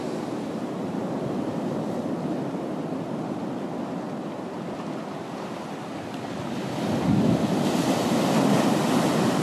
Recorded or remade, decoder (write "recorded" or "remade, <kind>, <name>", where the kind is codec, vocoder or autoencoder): recorded